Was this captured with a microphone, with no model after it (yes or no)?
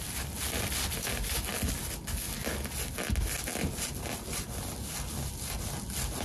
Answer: yes